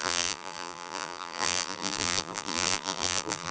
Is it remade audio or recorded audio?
remade